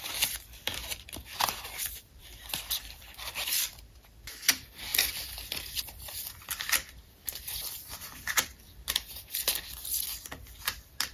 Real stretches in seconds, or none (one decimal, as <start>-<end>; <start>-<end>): none